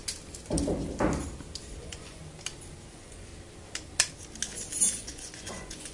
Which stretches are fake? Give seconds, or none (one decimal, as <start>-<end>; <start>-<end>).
1.8-2.2; 2.9-3.3; 4.9-5.9

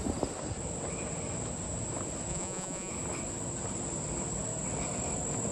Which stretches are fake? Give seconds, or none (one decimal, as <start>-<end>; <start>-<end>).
2.3-2.9

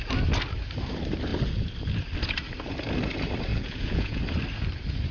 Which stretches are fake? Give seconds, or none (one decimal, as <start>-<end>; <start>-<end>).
3.5-4.2

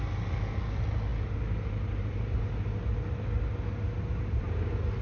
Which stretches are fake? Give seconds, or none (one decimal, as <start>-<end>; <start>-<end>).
none

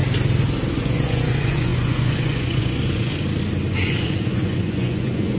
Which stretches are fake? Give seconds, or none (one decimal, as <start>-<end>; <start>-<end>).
0.8-3.1; 3.7-5.4

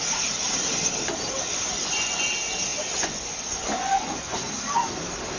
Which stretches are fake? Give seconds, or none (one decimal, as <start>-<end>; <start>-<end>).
1.5-2.3; 2.7-4.5